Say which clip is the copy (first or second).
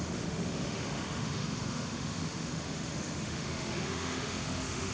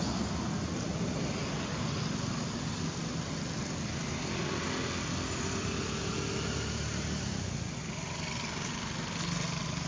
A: first